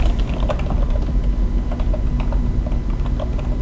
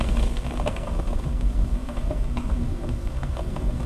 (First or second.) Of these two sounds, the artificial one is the second